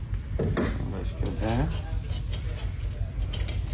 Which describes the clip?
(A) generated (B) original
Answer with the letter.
B